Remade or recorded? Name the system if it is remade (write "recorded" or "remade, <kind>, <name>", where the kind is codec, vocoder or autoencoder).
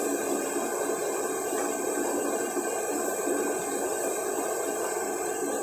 recorded